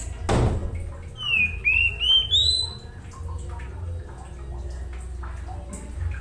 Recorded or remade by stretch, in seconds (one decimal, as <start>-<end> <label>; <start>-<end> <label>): 0.0-2.4 recorded; 2.4-3.0 remade; 3.0-6.2 recorded